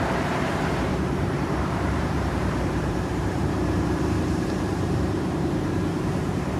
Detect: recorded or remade remade